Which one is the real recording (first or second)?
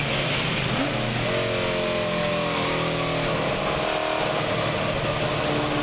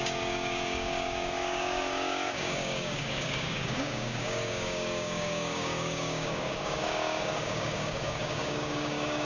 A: first